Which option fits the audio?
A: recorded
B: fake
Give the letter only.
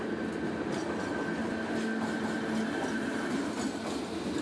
A